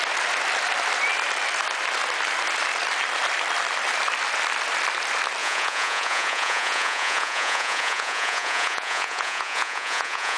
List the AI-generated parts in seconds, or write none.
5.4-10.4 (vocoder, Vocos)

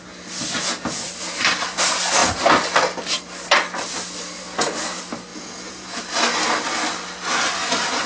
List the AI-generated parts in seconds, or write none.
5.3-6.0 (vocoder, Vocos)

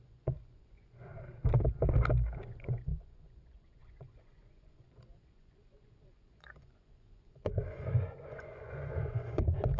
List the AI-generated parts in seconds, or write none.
0.0-1.1 (vocoder, Vocos); 2.4-9.8

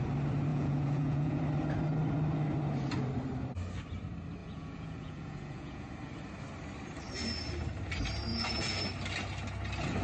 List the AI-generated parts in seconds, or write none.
0.5-1.4 (vocoder, Vocos); 4.4-5.9; 8.3-8.8

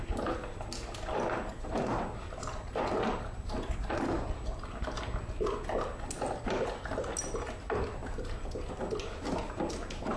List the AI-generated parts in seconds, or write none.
none

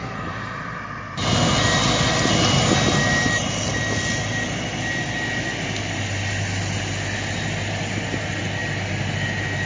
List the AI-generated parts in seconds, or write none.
none

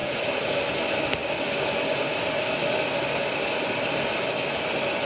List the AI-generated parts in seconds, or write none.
0.0-0.5 (vocoder, Vocos)